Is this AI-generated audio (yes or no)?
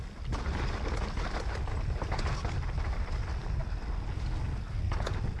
no